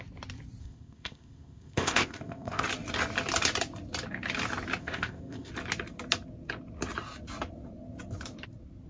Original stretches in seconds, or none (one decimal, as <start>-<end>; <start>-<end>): 0.0-0.6; 2.6-4.8; 5.5-8.9